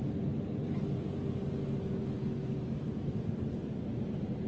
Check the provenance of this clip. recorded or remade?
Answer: recorded